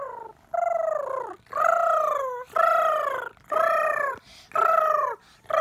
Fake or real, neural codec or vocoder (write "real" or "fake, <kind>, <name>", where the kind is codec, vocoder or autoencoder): real